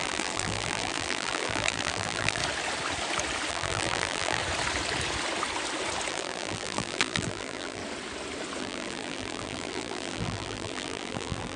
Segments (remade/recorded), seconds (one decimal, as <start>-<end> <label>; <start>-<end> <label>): 0.0-2.4 remade; 2.4-3.5 recorded; 3.5-4.4 remade; 4.4-6.1 recorded; 6.1-7.8 remade; 7.8-8.6 recorded; 8.6-11.6 remade